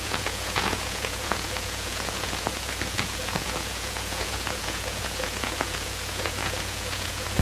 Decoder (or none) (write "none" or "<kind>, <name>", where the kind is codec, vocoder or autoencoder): vocoder, Vocos